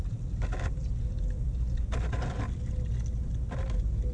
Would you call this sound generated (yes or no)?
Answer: no